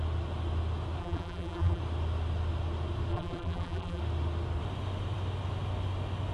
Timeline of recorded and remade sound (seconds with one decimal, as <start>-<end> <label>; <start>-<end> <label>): 0.0-1.0 recorded; 1.0-1.8 remade; 1.8-3.1 recorded; 3.1-4.0 remade; 4.0-6.3 recorded